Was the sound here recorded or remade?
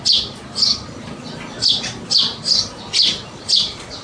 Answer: recorded